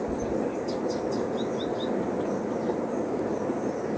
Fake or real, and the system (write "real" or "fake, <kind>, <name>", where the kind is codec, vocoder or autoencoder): real